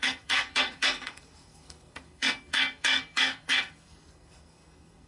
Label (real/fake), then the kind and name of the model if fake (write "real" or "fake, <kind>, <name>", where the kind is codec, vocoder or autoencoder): fake, codec, SNAC